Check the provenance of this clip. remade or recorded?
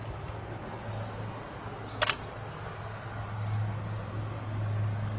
recorded